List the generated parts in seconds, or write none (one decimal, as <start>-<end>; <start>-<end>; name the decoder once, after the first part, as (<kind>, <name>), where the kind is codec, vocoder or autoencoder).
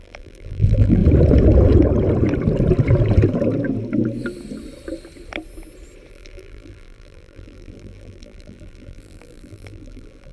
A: 0.0-1.0 (vocoder, BigVGAN v2); 6.1-10.3